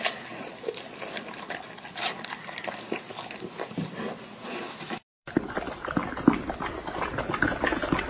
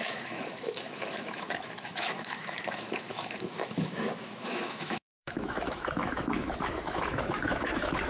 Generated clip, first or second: second